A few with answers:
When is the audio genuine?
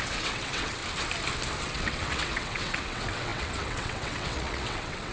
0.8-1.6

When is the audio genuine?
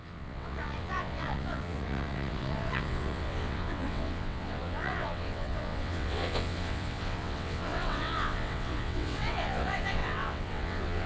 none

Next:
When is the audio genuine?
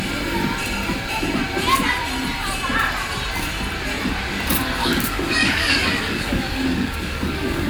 0.0-4.8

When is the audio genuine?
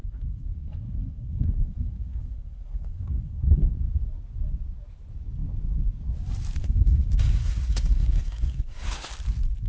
3.7-6.6; 9.1-9.7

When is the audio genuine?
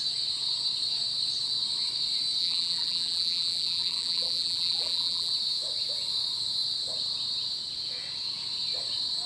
0.0-2.4; 5.3-9.3